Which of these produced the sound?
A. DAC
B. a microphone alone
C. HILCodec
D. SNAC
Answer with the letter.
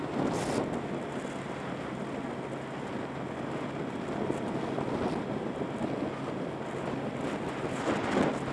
B